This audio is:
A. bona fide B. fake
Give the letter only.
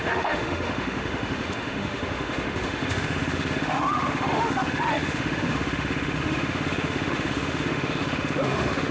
B